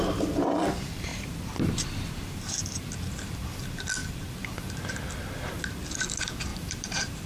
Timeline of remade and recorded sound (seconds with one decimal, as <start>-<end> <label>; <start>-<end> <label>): 0.0-1.1 recorded; 1.1-2.8 remade; 2.8-6.5 recorded; 6.5-7.3 remade